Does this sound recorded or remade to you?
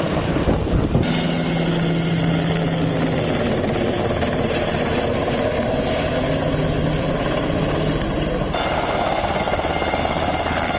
recorded